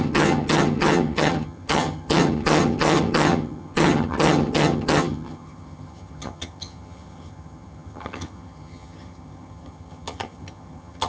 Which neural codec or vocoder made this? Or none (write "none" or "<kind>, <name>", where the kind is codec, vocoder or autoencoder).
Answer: vocoder, HiFi-GAN